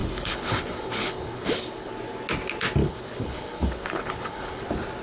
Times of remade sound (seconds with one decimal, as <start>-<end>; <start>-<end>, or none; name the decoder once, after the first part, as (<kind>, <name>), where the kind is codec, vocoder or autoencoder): 0.0-1.9 (codec, HILCodec); 2.8-4.6